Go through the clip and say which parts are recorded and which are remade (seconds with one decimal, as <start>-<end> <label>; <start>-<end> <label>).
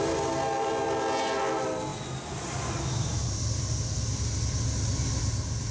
0.0-5.7 recorded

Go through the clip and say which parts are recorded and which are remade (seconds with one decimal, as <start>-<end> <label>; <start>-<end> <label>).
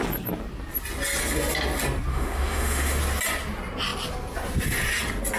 0.0-2.1 recorded; 2.1-3.0 remade; 3.0-5.4 recorded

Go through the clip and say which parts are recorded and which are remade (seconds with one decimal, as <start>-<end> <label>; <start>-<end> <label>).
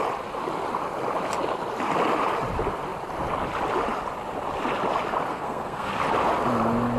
0.0-5.3 recorded; 5.3-5.9 remade; 5.9-7.0 recorded